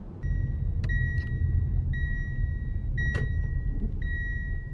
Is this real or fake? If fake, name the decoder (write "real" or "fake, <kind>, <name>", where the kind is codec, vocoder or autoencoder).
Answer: real